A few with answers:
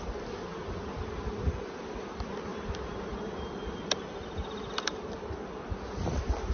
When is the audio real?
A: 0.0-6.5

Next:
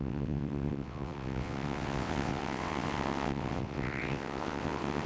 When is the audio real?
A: none

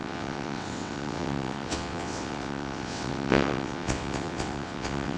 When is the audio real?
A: none

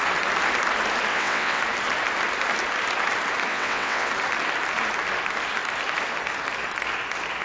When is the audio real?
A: 0.0-1.1; 1.6-3.5; 4.1-7.4

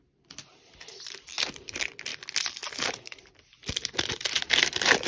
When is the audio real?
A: 0.0-5.1